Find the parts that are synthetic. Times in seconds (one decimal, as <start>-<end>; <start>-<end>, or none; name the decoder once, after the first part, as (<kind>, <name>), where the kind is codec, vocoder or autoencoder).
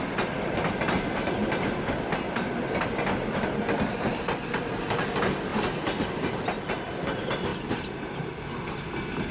none